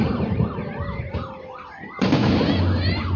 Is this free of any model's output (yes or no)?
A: yes